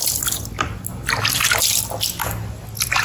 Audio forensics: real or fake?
real